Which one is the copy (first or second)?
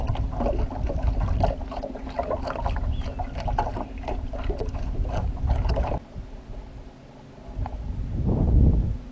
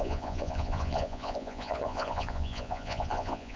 second